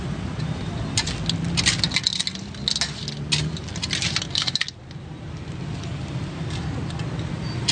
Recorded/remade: recorded